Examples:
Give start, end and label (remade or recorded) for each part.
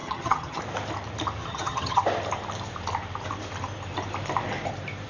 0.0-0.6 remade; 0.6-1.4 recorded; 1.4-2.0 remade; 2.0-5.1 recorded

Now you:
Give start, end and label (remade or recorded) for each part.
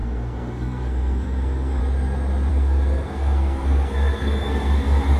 0.0-1.8 remade; 1.8-2.5 recorded; 2.5-5.2 remade